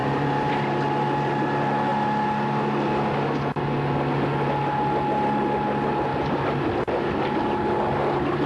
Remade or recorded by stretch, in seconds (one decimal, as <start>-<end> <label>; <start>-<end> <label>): 0.0-0.5 remade; 0.5-8.5 recorded